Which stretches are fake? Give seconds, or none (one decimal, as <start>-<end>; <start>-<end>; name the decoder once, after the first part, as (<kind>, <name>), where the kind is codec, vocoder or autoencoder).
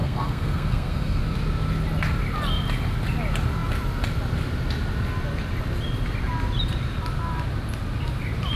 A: 0.0-1.2 (codec, SNAC)